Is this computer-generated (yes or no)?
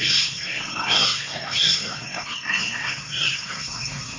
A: yes